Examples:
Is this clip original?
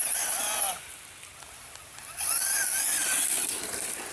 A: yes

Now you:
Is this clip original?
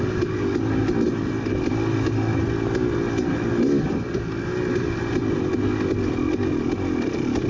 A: yes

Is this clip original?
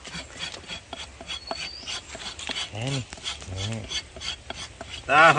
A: yes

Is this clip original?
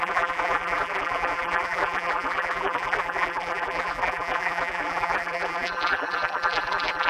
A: no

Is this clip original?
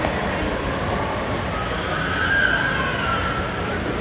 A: yes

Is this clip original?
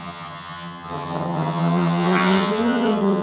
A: no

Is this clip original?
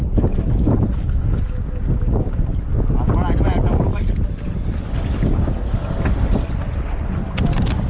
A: yes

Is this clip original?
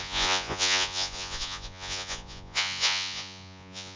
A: no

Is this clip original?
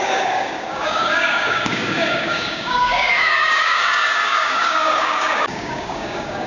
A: no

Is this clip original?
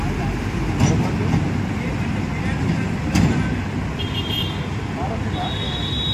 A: yes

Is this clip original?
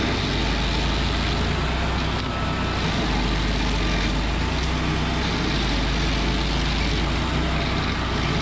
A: yes